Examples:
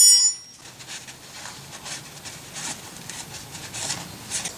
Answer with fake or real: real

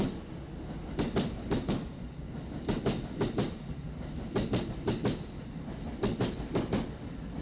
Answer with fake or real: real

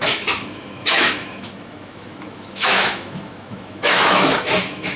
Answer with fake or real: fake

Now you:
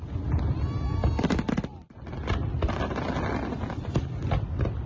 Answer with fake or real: real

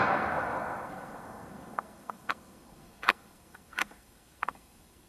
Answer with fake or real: fake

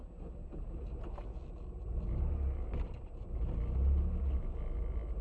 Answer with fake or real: real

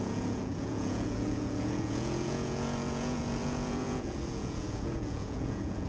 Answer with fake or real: fake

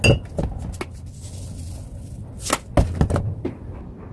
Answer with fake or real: real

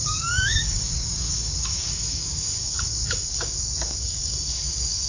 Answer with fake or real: fake